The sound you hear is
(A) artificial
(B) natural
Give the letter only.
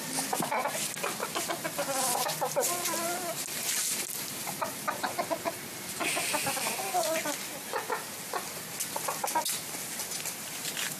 B